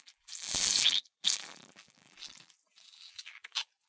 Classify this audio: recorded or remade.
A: remade